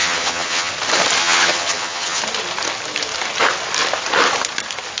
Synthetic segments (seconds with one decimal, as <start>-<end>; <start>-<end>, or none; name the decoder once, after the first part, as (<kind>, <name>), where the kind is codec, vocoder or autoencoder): 0.0-0.7 (vocoder, HiFi-GAN); 1.2-2.2